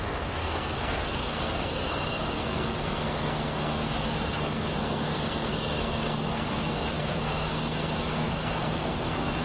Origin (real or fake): fake